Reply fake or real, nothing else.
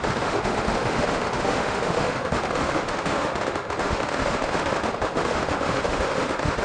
fake